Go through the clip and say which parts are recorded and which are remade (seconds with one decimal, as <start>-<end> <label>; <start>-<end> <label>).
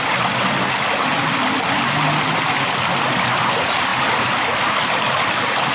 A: 0.0-5.7 recorded